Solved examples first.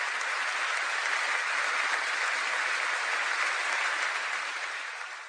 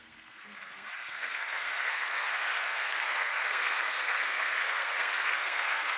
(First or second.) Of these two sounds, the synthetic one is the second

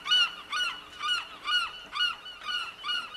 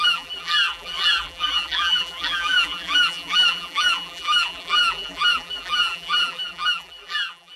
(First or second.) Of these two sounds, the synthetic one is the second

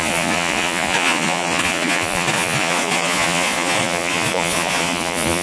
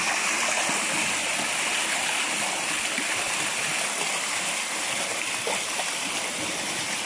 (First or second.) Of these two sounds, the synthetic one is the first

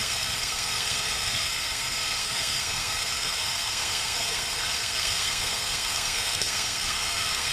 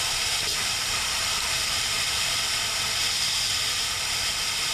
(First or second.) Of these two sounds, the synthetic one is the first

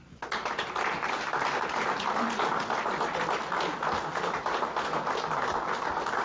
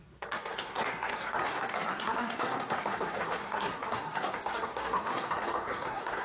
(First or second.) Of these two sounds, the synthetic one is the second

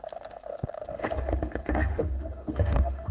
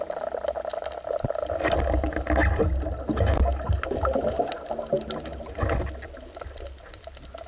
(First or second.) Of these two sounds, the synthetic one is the first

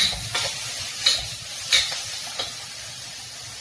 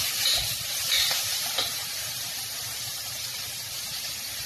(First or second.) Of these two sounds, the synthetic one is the second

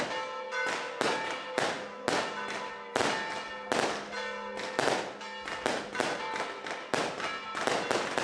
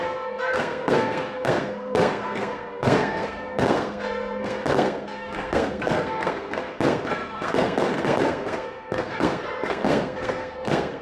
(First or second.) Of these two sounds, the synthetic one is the second